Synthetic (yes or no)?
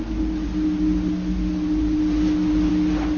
no